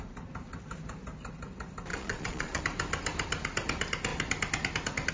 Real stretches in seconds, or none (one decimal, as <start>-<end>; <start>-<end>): 0.0-1.9; 2.6-5.1